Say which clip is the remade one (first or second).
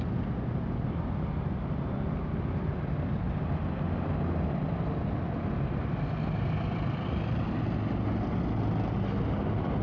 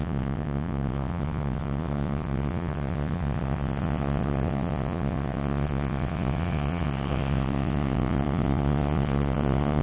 second